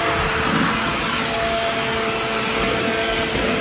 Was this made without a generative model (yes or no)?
yes